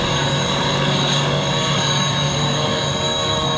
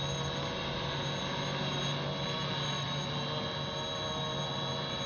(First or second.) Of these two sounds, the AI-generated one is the first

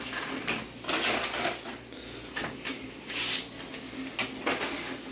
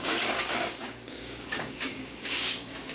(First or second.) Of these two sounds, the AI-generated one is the second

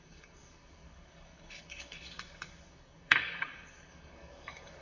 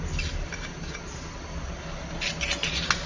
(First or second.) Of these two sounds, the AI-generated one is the first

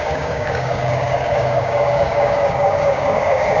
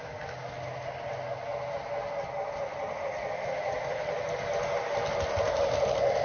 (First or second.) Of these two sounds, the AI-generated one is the first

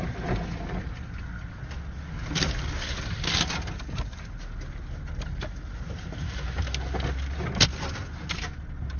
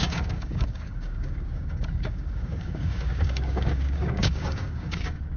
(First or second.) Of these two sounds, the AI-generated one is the second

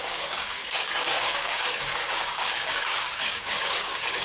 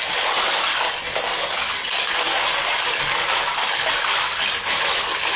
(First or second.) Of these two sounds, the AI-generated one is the first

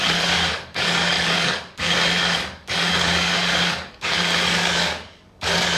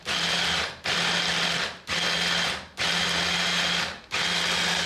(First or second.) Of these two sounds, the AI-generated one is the first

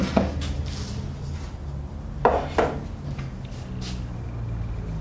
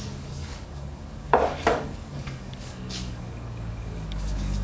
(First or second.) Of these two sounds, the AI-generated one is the second